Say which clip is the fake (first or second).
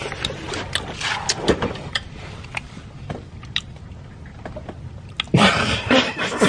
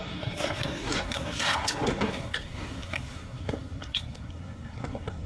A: second